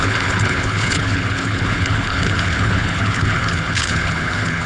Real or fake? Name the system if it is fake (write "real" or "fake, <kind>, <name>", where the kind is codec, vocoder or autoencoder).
fake, codec, HILCodec